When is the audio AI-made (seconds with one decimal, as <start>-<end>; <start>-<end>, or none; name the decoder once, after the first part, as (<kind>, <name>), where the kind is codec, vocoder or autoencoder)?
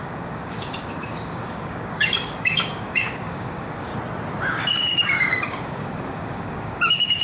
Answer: 0.0-3.9 (codec, DAC); 4.5-7.2